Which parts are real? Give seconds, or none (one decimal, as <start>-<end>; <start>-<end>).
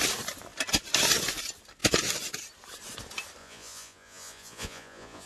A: 0.0-3.4